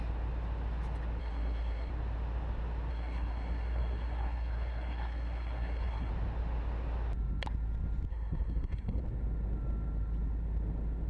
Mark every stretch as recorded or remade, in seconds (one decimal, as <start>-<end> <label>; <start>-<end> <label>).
0.0-1.2 recorded; 1.2-1.9 remade; 1.9-2.9 recorded; 2.9-6.1 remade; 6.1-8.1 recorded; 8.1-9.0 remade; 9.0-11.1 recorded

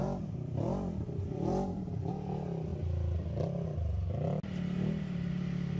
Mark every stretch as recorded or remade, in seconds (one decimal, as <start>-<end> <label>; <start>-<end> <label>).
0.0-2.1 remade; 2.1-5.8 recorded

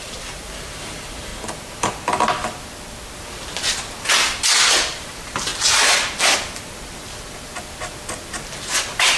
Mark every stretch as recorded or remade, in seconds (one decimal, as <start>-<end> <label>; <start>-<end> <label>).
0.0-1.3 remade; 1.3-4.7 recorded; 4.7-5.5 remade; 5.5-9.2 recorded

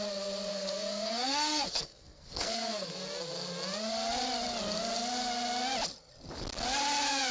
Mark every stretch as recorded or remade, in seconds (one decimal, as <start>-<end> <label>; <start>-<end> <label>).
0.0-0.5 recorded; 0.5-2.9 remade; 2.9-7.3 recorded

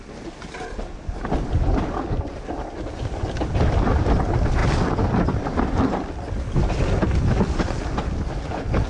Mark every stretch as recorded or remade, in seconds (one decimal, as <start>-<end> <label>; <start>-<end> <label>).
0.0-8.9 recorded